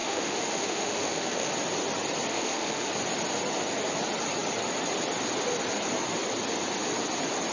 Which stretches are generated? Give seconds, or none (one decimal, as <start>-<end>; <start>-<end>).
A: 0.0-1.5; 2.3-2.9